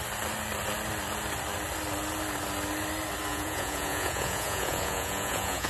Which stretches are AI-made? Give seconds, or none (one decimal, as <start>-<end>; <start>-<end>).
3.3-5.7